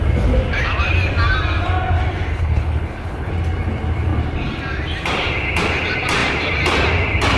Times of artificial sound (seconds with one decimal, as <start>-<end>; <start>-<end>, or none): 2.3-3.3